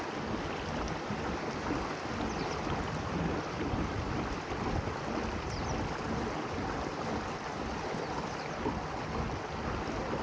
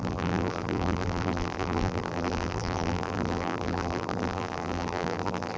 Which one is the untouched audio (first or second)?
first